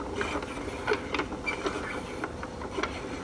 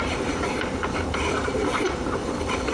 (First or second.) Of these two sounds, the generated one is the second